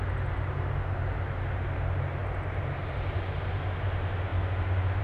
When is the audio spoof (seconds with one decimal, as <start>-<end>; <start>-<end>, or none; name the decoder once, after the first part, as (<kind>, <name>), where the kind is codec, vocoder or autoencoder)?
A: none